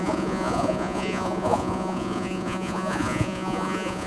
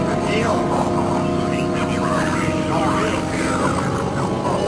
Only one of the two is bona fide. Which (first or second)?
second